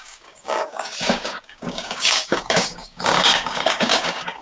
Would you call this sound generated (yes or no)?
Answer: yes